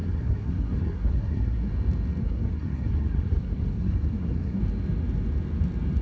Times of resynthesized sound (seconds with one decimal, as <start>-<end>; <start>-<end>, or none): 0.0-1.7; 2.2-4.6